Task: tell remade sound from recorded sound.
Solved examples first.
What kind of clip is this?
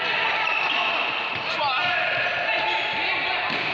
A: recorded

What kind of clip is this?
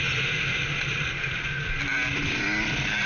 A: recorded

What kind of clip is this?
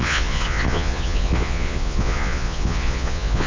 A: remade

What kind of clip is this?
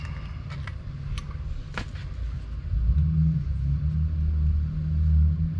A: recorded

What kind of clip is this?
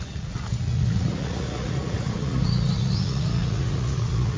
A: remade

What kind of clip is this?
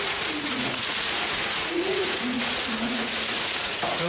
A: remade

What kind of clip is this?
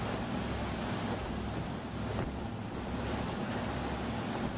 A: recorded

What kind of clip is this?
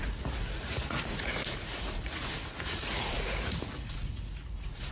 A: remade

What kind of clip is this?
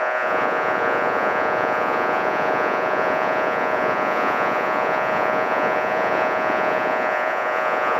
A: remade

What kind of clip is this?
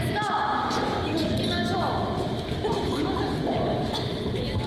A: recorded